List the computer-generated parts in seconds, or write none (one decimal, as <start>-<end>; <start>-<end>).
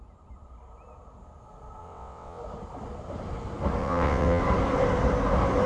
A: 1.8-2.4; 3.8-4.4